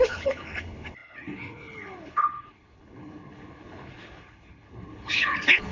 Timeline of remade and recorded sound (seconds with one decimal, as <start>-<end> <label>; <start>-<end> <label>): 0.0-5.7 remade